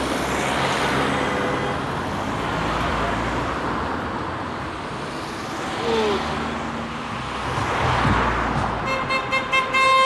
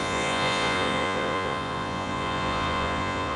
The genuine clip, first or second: first